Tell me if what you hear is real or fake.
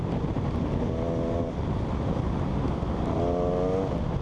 real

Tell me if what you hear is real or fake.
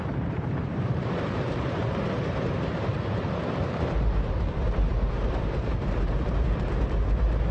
fake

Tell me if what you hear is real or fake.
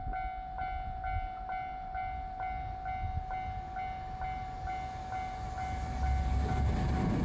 real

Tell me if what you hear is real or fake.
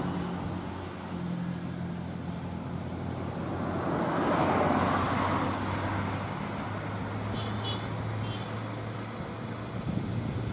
real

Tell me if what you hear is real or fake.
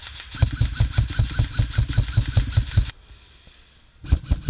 real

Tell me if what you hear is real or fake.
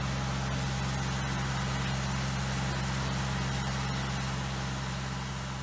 real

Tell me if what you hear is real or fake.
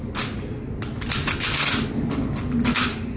real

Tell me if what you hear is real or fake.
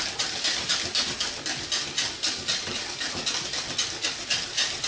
real